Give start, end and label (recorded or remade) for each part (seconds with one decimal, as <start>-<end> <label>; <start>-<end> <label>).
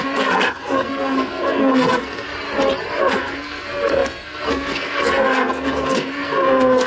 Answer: 0.0-2.3 remade; 2.3-3.0 recorded; 3.0-6.9 remade